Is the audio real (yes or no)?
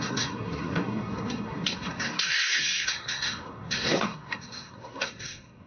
no